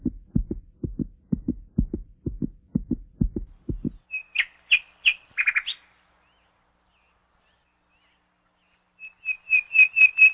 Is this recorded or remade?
recorded